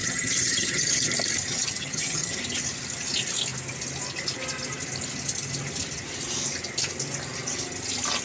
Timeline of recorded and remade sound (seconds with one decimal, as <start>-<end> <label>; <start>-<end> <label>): 0.0-1.1 remade; 1.1-1.5 recorded; 1.5-2.4 remade; 2.4-8.2 recorded